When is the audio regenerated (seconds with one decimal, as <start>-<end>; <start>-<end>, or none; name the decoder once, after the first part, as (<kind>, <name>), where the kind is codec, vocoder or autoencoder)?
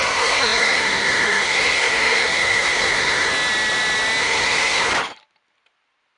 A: 0.0-3.3 (codec, SNAC); 4.2-4.9